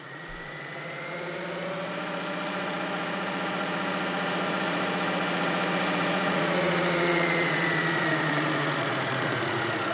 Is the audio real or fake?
fake